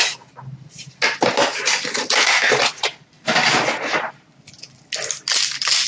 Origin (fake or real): real